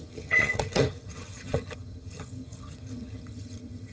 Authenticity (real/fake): fake